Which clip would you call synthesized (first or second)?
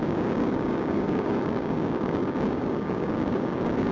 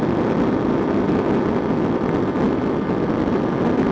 first